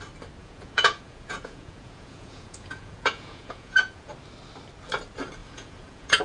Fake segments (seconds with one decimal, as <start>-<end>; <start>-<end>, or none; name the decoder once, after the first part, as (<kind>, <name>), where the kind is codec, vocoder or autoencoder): 0.4-4.1 (vocoder, Vocos); 5.4-6.2